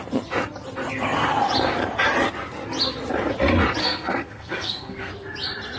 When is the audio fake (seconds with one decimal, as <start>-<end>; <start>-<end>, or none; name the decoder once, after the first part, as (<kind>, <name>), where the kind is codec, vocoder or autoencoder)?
3.8-5.1 (codec, SNAC)